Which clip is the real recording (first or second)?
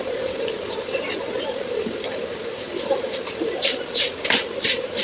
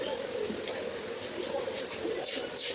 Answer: second